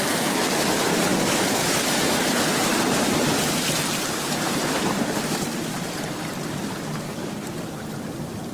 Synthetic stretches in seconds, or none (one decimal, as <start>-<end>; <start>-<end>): 1.6-6.0; 7.2-7.9